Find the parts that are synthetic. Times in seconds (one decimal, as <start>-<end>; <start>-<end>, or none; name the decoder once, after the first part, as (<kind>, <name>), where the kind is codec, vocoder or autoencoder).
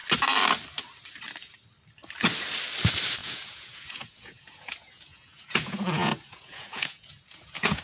3.2-7.8 (vocoder, Vocos)